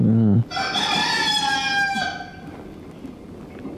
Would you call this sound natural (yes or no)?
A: yes